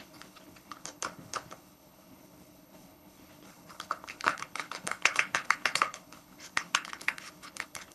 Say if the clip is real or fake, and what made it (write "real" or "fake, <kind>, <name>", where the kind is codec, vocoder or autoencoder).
fake, codec, HILCodec